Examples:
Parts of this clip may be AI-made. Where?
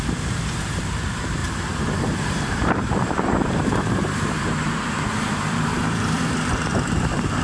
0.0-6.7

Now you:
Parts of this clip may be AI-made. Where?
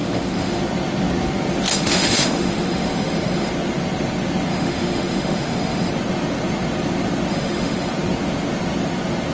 0.0-0.6; 1.7-3.5; 4.5-5.9; 7.3-7.9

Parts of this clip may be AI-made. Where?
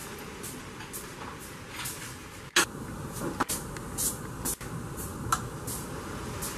none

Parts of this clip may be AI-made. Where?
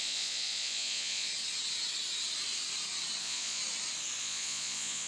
0.0-1.3; 3.2-3.6; 4.2-5.1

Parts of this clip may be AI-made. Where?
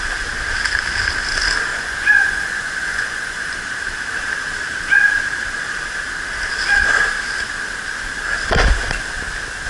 1.7-3.4